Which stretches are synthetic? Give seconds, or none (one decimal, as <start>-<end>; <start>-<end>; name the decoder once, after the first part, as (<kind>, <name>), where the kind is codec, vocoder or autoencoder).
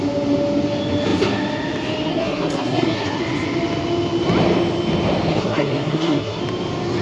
2.1-3.2 (codec, SNAC); 5.3-6.4